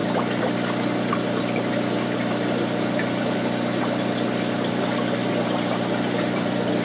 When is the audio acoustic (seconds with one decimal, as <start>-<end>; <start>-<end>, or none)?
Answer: 0.0-6.8